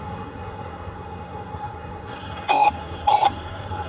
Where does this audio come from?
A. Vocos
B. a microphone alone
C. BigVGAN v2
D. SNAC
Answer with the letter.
D